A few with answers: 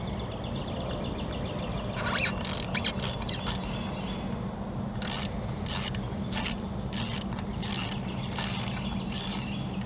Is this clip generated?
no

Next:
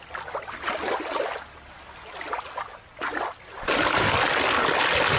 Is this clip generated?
no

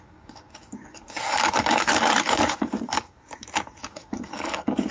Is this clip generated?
yes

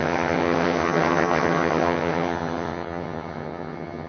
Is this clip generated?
yes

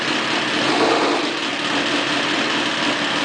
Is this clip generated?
no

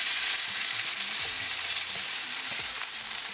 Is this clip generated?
no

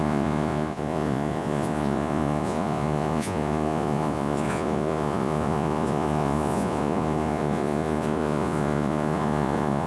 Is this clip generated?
yes